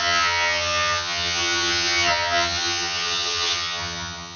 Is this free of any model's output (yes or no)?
no